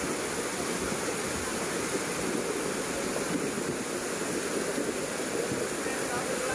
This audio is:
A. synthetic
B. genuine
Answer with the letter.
B